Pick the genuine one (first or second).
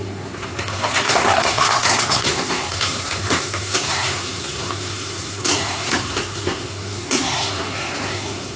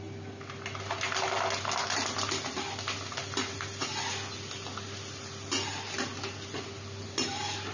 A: second